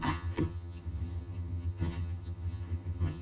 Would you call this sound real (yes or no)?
no